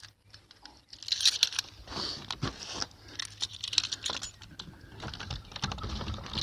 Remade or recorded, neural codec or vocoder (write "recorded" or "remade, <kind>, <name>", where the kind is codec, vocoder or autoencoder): recorded